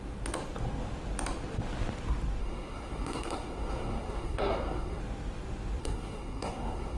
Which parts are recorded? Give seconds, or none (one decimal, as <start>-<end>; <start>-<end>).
0.0-2.4; 5.0-5.8